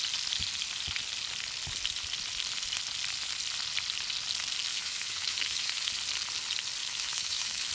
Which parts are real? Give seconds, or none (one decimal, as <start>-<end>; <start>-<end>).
0.0-4.7; 5.9-6.8